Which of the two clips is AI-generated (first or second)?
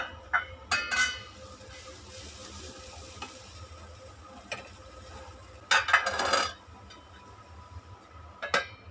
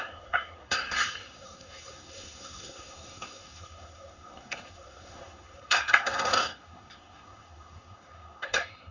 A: second